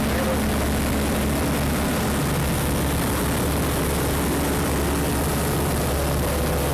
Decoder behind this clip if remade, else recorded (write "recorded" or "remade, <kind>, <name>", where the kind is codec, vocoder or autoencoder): recorded